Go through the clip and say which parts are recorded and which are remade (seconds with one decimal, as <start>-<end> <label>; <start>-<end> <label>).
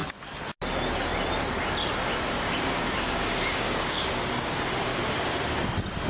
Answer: 0.0-2.3 recorded; 2.3-4.9 remade; 4.9-6.1 recorded